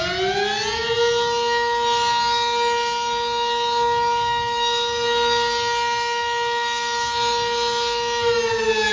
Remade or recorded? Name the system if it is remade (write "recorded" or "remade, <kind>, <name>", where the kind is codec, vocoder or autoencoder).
recorded